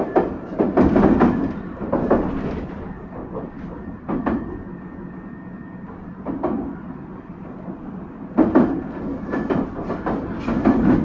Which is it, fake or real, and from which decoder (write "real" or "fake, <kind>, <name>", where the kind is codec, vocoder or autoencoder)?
real